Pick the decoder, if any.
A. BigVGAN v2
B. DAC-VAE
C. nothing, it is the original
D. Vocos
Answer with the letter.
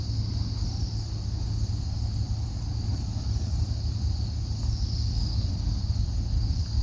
C